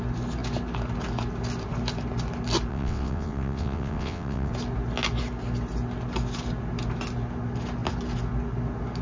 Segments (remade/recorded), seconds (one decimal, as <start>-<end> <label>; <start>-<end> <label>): 0.0-2.7 recorded; 2.7-4.5 remade; 4.5-9.0 recorded